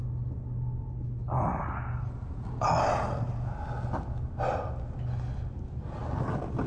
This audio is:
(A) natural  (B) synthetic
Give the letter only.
A